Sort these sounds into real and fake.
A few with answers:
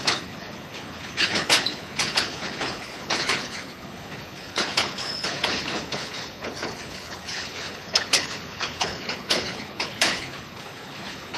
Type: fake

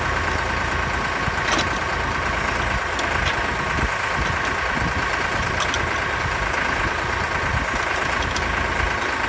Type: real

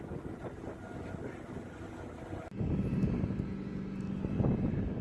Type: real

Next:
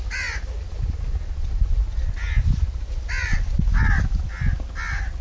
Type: real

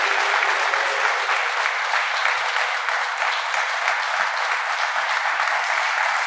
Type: real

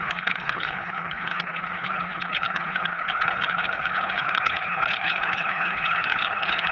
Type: fake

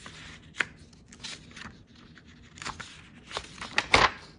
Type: real